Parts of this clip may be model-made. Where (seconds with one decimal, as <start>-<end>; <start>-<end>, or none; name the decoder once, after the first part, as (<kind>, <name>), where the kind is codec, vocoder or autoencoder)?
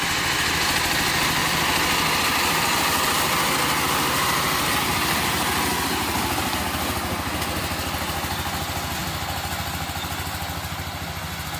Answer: none